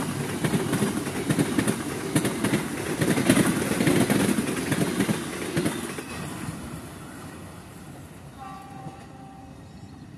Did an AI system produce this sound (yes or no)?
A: no